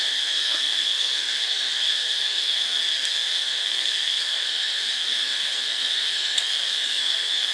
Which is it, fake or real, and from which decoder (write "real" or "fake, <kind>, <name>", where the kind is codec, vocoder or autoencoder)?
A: fake, codec, SNAC